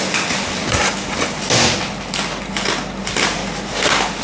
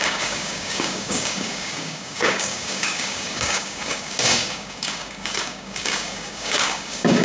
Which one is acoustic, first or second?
first